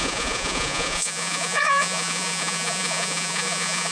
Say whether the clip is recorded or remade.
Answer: remade